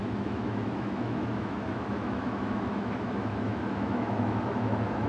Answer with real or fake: fake